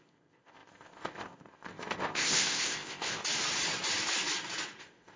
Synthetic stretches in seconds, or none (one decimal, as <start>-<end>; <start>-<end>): 0.0-3.2; 4.8-5.2